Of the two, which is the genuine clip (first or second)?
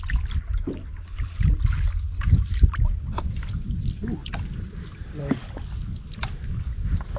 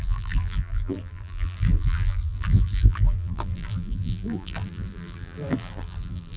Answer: first